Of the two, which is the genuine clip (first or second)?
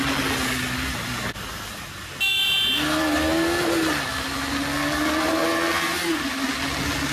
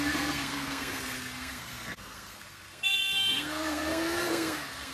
first